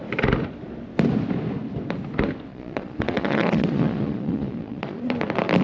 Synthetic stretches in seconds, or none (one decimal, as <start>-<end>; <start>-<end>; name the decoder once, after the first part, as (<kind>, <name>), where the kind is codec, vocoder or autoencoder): 2.5-5.1 (vocoder, Vocos)